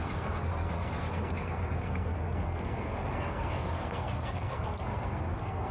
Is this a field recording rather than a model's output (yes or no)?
no